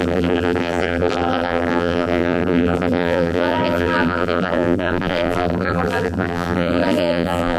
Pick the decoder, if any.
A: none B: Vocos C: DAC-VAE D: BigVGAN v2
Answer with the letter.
D